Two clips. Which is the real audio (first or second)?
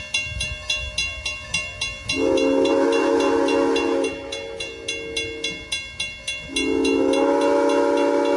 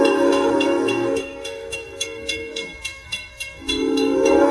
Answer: first